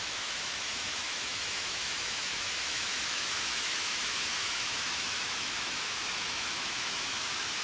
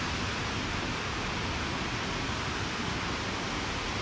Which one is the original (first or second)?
second